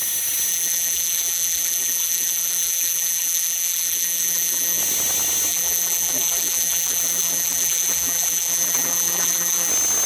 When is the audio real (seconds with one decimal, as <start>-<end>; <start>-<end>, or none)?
0.0-0.5; 4.8-5.5; 9.7-10.1